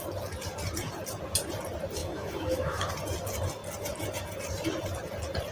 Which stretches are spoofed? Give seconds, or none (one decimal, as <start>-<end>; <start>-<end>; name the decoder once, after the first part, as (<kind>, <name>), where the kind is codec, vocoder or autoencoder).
2.0-2.9 (autoencoder, DAC-VAE)